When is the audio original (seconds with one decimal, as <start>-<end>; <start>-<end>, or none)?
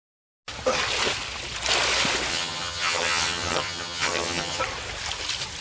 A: 0.0-2.3; 4.6-5.6